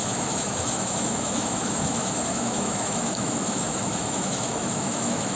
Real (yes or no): no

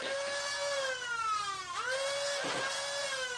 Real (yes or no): yes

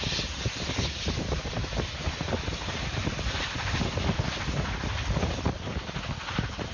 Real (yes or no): yes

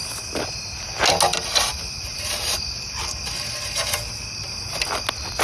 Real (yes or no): yes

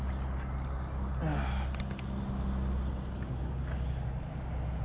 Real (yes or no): yes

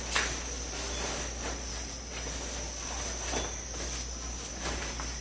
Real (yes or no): yes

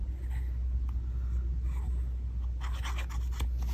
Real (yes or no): yes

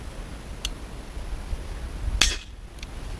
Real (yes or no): yes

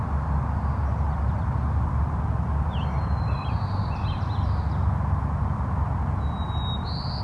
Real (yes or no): yes